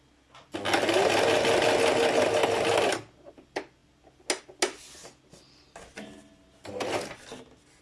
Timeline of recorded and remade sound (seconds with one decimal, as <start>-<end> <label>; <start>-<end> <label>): 0.0-7.8 recorded